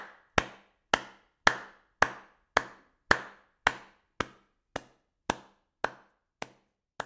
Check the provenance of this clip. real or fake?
real